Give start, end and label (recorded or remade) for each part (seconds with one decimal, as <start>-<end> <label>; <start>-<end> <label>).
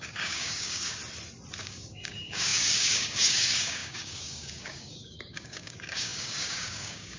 0.0-1.0 remade; 1.0-1.6 recorded; 1.6-7.2 remade